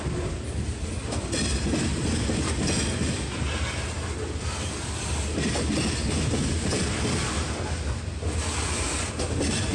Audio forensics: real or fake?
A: real